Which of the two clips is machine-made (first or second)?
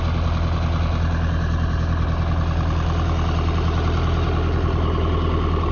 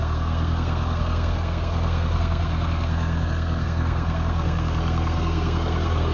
second